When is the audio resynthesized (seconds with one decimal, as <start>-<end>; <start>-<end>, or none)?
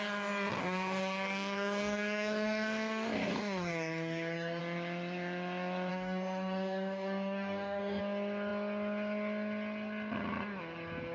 0.6-4.6; 5.9-8.0